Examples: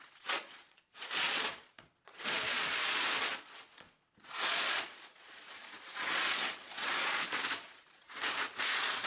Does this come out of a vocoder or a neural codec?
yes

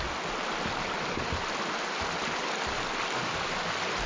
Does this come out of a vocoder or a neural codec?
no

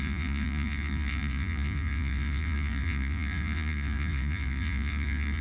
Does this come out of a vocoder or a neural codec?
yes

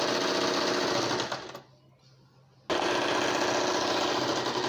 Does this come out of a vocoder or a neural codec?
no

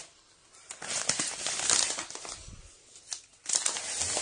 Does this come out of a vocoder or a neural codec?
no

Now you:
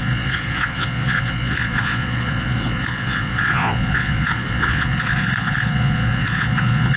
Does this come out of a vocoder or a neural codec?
yes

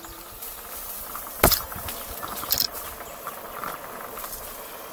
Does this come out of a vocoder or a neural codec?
no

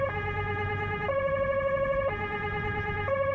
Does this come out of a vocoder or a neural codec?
no